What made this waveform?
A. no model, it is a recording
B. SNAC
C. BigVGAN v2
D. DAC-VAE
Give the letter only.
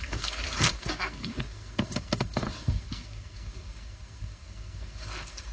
B